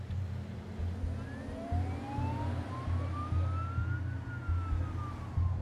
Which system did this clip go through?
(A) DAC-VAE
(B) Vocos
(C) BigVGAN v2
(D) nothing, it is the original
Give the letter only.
D